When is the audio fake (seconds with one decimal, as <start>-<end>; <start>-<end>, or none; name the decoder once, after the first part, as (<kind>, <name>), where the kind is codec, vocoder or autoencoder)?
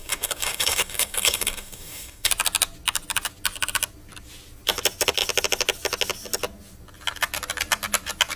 0.0-2.3 (codec, DAC)